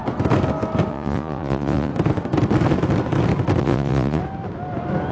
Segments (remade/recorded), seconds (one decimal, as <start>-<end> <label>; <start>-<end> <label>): 0.0-0.9 recorded; 0.9-1.9 remade; 1.9-3.6 recorded; 3.6-4.2 remade; 4.2-5.1 recorded